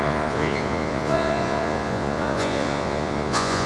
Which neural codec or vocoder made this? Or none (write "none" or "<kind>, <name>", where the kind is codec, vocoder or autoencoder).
vocoder, Vocos